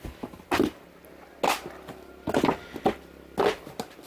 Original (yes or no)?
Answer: yes